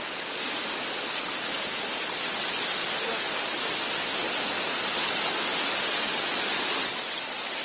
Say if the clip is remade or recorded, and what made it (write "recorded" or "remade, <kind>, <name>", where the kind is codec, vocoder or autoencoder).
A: recorded